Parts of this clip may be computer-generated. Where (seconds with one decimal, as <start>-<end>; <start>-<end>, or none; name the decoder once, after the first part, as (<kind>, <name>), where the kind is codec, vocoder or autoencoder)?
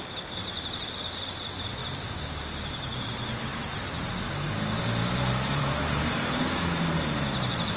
0.4-1.1 (vocoder, BigVGAN v2); 5.0-6.4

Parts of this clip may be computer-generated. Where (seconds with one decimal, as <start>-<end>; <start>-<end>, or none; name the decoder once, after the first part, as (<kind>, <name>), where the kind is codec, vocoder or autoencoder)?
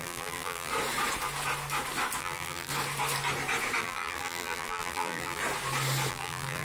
0.0-0.7 (vocoder, BigVGAN v2); 2.2-2.7; 3.8-5.4; 6.1-6.6